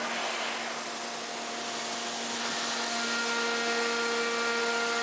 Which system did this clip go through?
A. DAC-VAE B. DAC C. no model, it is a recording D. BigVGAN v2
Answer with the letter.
C